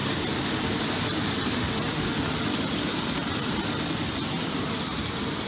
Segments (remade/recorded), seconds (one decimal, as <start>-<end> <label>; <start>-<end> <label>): 0.0-5.5 recorded

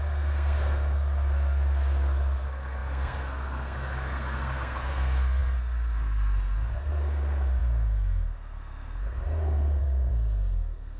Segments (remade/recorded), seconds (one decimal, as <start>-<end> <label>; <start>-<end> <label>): 0.0-11.0 remade